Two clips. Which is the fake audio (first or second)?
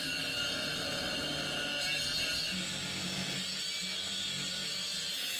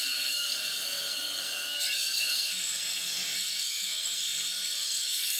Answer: second